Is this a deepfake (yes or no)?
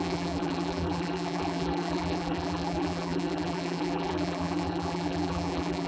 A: yes